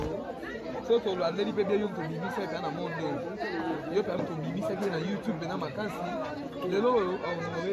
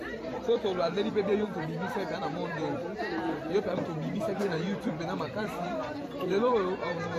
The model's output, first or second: second